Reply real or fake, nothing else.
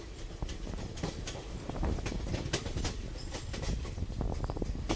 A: real